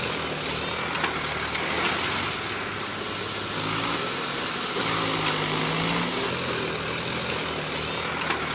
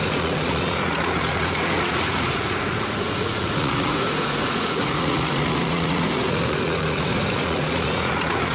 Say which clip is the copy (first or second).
second